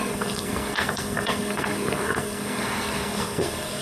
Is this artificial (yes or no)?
yes